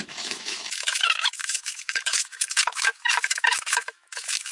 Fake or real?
fake